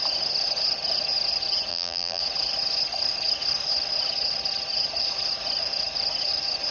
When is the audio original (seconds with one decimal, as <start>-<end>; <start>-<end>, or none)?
0.0-1.7; 2.2-6.7